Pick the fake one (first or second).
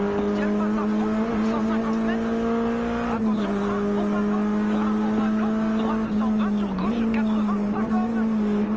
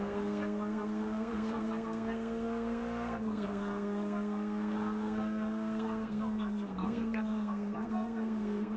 second